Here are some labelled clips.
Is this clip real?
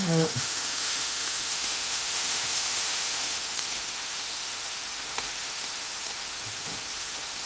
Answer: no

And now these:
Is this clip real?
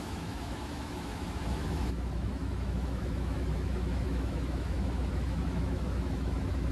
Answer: no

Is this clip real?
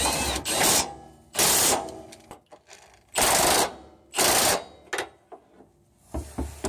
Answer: yes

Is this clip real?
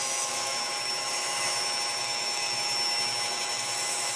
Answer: no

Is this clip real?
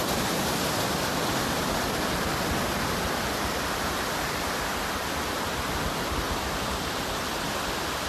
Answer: yes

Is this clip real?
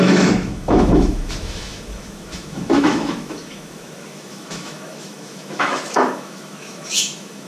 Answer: no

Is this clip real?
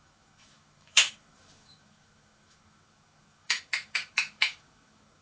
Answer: no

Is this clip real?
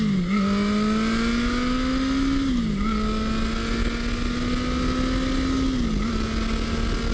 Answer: yes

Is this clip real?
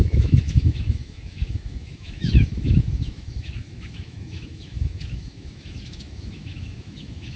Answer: no